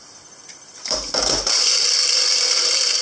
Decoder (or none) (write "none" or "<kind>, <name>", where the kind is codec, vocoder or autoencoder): none